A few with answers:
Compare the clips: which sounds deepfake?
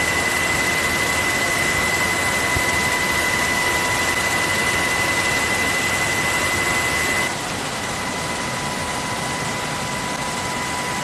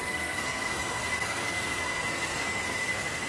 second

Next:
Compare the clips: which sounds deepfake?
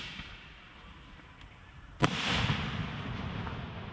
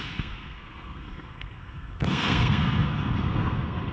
second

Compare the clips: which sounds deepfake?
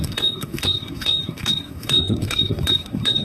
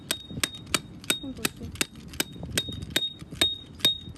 first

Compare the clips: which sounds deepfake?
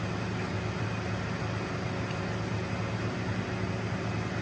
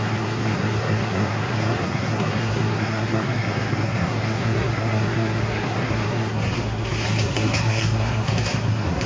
second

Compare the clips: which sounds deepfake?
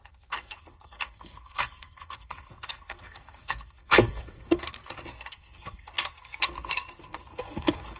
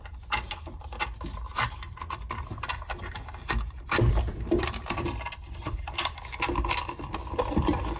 first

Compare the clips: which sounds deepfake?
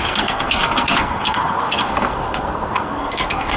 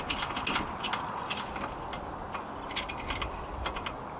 first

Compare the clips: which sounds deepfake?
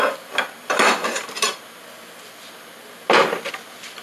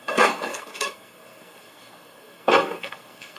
second